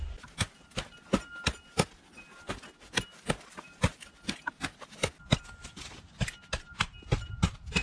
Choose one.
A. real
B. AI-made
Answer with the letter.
A